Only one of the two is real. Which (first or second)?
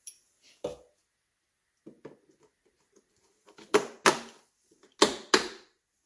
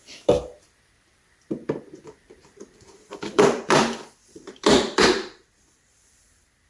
first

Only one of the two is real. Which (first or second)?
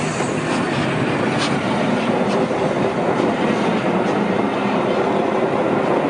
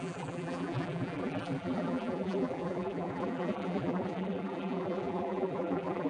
first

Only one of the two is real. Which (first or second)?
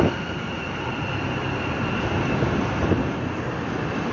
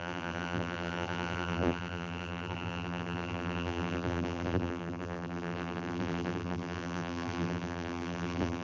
first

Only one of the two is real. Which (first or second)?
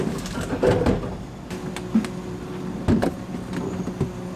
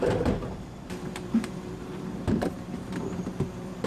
first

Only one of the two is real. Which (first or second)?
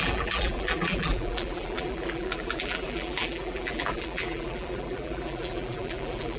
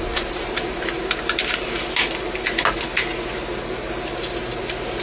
second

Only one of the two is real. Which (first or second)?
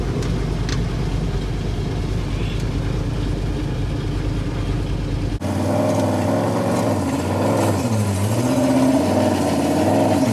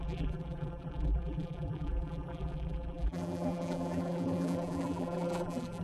first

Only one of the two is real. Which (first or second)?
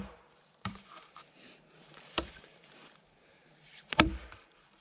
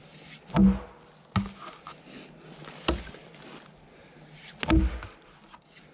second